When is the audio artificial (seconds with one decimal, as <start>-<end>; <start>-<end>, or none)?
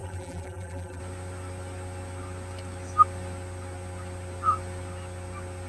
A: 0.0-1.0